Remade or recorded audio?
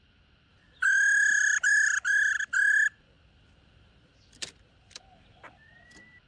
remade